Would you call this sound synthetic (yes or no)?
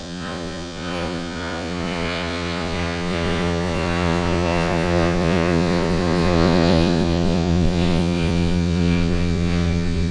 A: yes